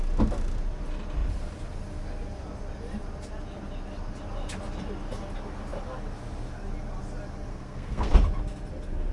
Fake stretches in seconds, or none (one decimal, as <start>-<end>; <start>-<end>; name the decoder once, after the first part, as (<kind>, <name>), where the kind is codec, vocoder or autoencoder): 7.5-8.1 (codec, SNAC)